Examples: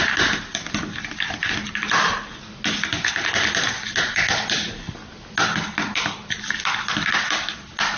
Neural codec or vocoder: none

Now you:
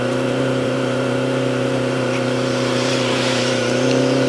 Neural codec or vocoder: vocoder, BigVGAN v2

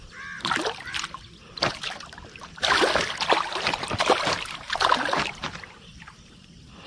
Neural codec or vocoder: vocoder, BigVGAN v2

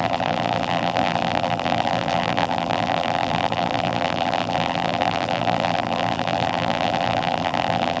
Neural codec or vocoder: vocoder, BigVGAN v2